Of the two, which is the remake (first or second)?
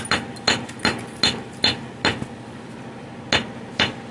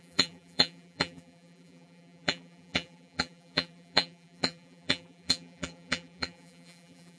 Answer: second